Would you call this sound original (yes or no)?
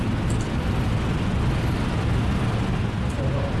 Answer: yes